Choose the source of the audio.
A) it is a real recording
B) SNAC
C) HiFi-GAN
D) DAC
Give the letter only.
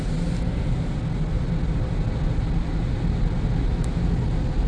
A